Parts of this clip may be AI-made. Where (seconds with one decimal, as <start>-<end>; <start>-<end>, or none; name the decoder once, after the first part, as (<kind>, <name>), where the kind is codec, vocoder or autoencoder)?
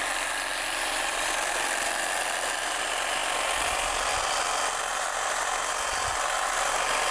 0.5-2.0 (vocoder, BigVGAN v2); 3.2-3.9; 4.9-5.7